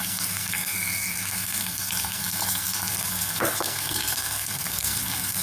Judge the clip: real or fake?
fake